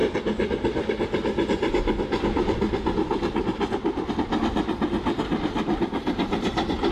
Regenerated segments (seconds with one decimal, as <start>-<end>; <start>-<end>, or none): 4.1-6.9